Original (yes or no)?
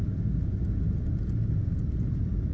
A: yes